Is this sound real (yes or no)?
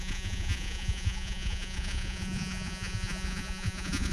no